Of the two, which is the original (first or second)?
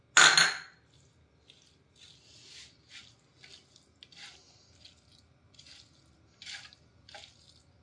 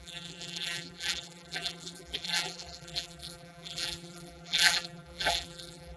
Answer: first